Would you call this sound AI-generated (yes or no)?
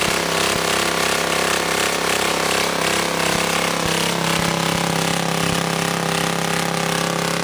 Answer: no